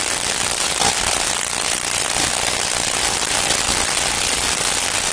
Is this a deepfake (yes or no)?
no